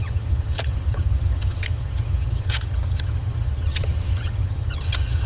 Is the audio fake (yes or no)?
yes